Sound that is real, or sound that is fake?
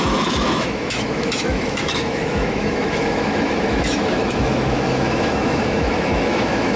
fake